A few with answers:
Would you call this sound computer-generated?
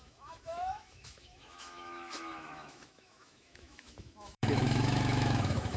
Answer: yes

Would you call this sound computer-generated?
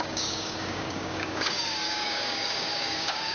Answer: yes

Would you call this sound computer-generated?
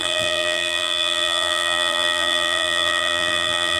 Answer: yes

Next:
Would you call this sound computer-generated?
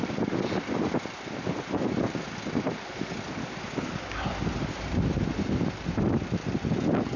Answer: no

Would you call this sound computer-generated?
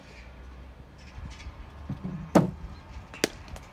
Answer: no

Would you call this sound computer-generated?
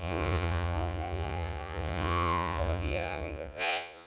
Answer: yes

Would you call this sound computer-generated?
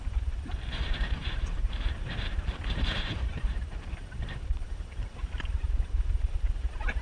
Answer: yes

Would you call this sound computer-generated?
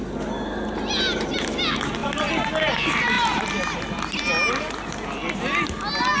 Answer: no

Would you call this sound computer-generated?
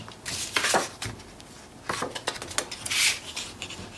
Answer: no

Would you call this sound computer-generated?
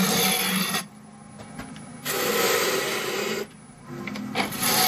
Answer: no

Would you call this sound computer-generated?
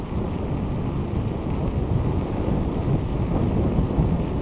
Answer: no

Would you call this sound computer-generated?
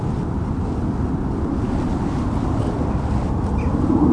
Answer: no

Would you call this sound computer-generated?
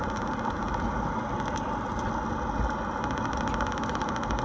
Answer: no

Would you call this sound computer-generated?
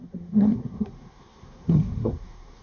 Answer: yes